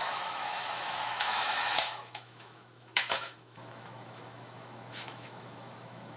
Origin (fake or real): fake